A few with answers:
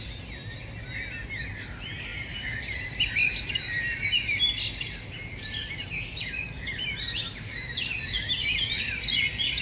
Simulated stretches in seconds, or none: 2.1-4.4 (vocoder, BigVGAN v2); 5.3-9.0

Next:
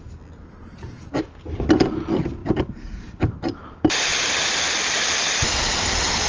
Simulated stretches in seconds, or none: none

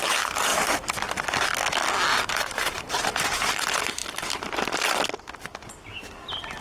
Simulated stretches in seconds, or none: 2.1-2.8 (vocoder, BigVGAN v2)